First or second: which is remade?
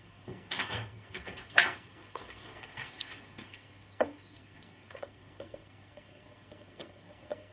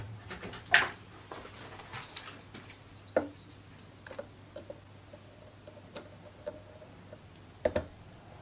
first